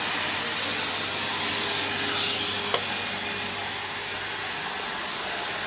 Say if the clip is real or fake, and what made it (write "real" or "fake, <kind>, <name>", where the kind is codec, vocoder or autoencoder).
real